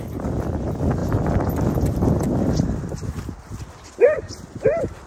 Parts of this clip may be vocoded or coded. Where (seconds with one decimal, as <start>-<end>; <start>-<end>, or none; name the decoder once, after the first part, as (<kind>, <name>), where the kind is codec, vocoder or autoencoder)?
none